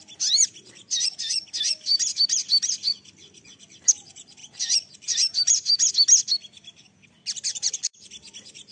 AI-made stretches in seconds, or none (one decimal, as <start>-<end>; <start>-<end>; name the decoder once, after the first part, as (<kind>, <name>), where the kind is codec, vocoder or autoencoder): 4.4-5.9 (vocoder, BigVGAN v2); 7.5-8.1